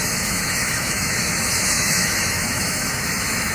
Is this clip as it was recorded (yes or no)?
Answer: no